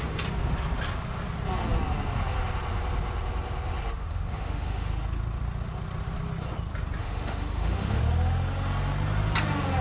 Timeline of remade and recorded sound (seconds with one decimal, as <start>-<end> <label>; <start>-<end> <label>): 0.0-4.0 recorded; 4.0-4.9 remade; 4.9-7.0 recorded; 7.0-8.0 remade; 8.0-9.8 recorded